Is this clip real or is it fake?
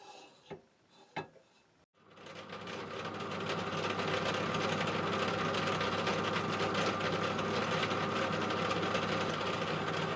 real